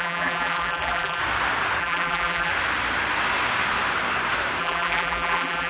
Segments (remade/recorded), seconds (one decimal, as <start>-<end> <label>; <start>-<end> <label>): 0.0-1.2 remade; 1.2-1.8 recorded; 1.8-2.5 remade; 2.5-4.6 recorded; 4.6-5.7 remade